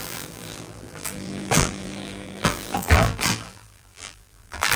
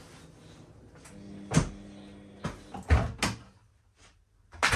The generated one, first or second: first